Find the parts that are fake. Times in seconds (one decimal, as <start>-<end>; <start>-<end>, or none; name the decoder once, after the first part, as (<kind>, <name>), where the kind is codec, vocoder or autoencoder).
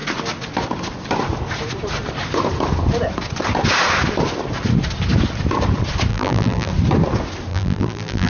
6.1-6.7 (vocoder, BigVGAN v2); 7.5-8.3